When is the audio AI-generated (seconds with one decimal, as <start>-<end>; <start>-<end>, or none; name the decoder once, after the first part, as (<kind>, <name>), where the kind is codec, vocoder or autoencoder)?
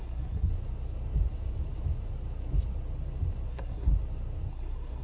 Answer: 0.0-0.5 (codec, SNAC); 3.5-3.9; 4.5-5.0